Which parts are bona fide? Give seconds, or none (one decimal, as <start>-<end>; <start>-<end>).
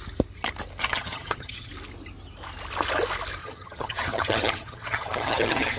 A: 0.0-0.8; 1.7-3.4